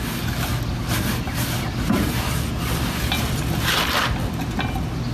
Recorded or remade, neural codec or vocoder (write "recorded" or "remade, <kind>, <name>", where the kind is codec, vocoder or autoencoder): recorded